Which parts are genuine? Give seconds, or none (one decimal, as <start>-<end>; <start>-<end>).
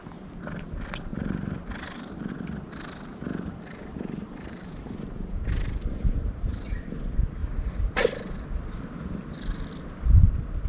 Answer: 0.0-1.1; 2.3-3.3; 7.0-10.7